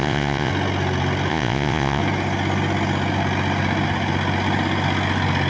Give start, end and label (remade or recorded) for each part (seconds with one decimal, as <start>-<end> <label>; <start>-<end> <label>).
0.0-0.5 remade; 0.5-1.3 recorded; 1.3-2.0 remade; 2.0-5.5 recorded

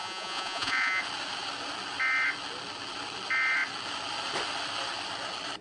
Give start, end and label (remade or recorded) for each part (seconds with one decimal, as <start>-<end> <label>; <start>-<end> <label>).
0.0-1.0 remade; 1.0-5.6 recorded

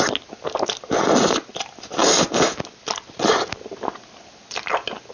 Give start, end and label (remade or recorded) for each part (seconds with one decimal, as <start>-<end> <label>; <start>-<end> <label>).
0.0-5.1 recorded

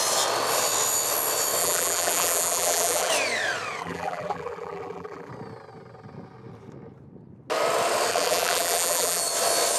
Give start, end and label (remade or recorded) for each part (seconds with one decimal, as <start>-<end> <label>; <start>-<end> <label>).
0.0-1.6 recorded; 1.6-3.1 remade; 3.1-3.8 recorded; 3.8-5.3 remade; 5.3-8.1 recorded; 8.1-9.2 remade; 9.2-9.8 recorded

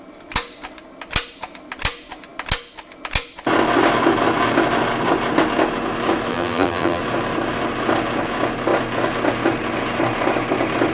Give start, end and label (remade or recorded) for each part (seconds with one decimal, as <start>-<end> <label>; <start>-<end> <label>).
0.0-6.3 recorded; 6.3-7.0 remade; 7.0-10.9 recorded